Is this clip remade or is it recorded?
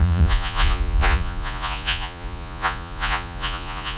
remade